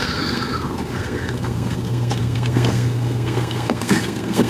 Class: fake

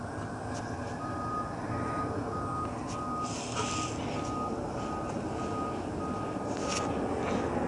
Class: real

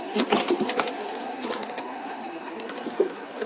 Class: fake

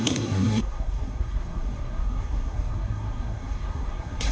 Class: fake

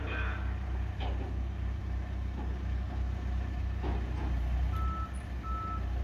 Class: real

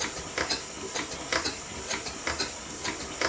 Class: real